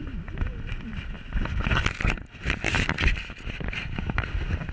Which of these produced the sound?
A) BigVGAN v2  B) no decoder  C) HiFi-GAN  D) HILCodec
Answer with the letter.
B